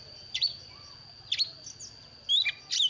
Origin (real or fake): real